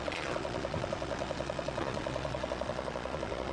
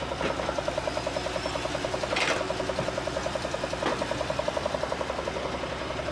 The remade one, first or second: first